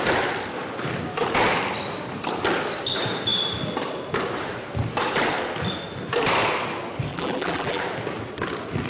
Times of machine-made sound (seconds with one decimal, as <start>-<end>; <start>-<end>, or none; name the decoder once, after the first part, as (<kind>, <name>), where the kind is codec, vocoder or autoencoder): 7.1-7.8 (vocoder, BigVGAN v2)